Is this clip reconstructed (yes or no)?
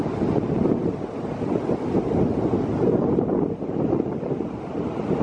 no